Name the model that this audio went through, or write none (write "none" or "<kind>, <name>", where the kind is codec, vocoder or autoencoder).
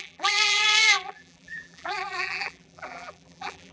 vocoder, BigVGAN v2